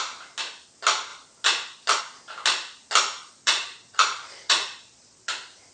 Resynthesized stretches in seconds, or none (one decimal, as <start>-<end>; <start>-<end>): 3.2-5.3

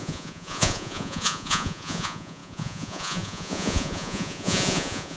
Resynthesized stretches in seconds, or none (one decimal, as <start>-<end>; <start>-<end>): 0.0-5.2

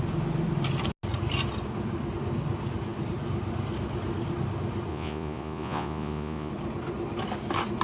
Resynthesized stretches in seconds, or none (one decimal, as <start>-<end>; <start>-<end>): 4.9-6.5

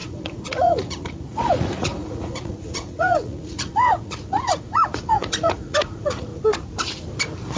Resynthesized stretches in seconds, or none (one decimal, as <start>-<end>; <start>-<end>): 0.0-6.3

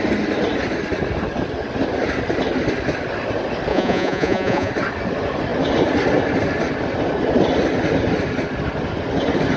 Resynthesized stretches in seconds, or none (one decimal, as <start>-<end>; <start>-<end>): 3.7-4.7

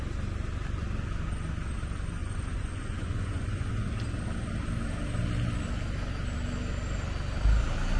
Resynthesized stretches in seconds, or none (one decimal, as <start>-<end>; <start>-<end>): 2.2-3.9

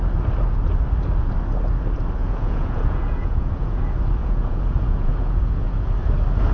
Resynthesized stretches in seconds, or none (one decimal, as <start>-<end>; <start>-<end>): 2.2-3.8; 4.2-5.9